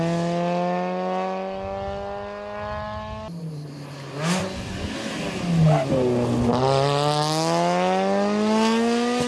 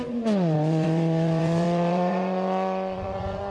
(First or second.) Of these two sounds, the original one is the first